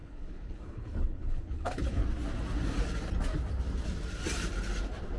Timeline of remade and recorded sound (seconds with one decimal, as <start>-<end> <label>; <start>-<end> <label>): 0.0-2.0 remade; 2.0-5.2 recorded